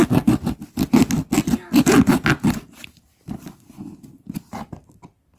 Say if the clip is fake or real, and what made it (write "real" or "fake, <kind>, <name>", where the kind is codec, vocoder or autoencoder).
real